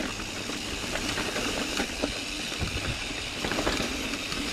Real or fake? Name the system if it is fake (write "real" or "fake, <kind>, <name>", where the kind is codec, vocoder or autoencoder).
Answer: real